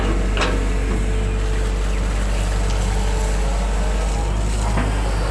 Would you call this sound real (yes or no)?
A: yes